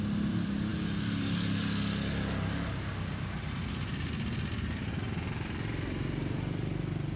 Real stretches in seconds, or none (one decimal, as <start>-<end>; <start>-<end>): 0.0-7.2